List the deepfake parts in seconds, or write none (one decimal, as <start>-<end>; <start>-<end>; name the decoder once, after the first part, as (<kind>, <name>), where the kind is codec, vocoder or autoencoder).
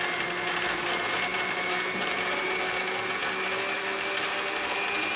1.3-2.6 (vocoder, BigVGAN v2)